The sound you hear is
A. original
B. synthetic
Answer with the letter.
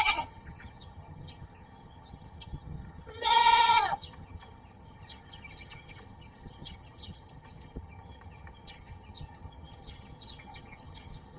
B